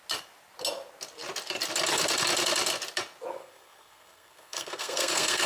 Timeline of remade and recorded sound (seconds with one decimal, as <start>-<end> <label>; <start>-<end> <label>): 0.0-3.3 recorded; 3.3-5.5 remade